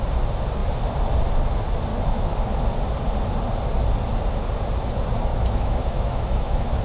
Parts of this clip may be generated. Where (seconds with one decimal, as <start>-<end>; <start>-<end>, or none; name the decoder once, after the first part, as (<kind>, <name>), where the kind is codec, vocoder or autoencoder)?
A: 1.9-2.6 (autoencoder, DAC-VAE); 5.3-6.8